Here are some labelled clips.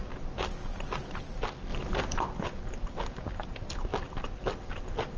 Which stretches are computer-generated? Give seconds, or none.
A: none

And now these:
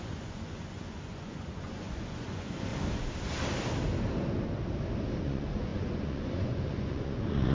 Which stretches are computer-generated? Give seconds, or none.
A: 0.0-2.7 (vocoder, Vocos); 5.2-7.5

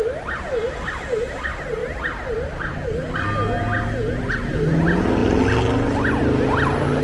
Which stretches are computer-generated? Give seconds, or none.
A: none

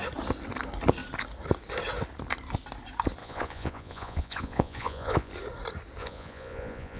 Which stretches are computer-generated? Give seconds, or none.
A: 3.2-5.3 (vocoder, Vocos); 6.0-7.0

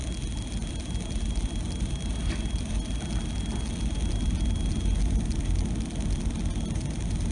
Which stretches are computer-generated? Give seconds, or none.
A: none

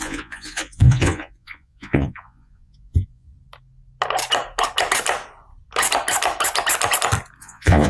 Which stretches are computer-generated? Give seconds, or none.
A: 0.0-3.3 (vocoder, Vocos); 7.4-7.9

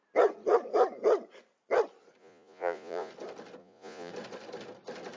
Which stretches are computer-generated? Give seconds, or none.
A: 2.2-3.1 (vocoder, Vocos); 3.6-4.1

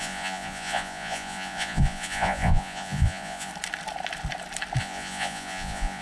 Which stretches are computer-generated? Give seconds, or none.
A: 0.0-3.5 (vocoder, Vocos); 4.8-6.0